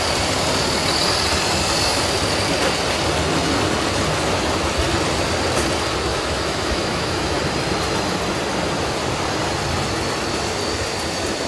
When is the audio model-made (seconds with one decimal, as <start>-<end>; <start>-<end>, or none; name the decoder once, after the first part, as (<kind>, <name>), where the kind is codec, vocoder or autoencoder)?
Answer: 6.1-7.4 (autoencoder, DAC-VAE)